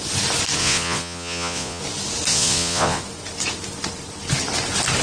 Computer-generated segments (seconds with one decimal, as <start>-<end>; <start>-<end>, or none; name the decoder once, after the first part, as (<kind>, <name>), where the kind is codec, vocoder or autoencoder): 0.6-1.8 (vocoder, Vocos); 2.3-3.0